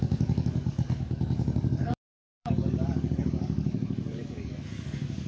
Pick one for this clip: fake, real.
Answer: fake